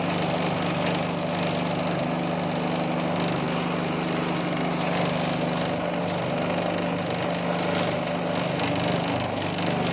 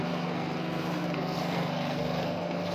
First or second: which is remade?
second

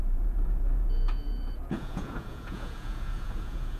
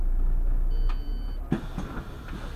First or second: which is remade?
first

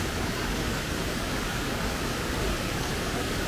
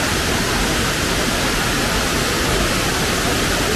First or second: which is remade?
first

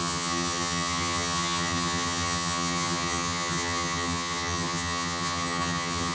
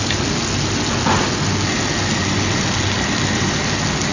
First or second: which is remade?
first